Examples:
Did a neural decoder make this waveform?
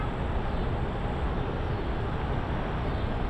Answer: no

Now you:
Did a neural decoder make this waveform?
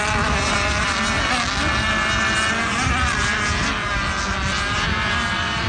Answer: no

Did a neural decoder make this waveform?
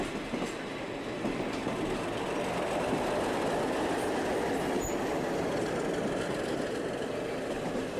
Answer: no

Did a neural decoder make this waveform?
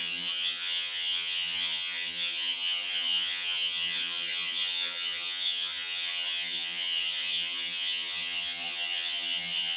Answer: yes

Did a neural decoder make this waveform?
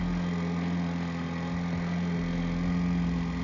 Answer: no